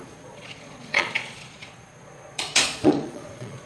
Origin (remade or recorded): remade